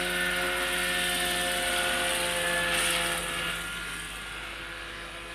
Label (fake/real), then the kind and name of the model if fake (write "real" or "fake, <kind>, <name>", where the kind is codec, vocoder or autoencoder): real